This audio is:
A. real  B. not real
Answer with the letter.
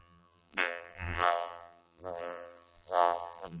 B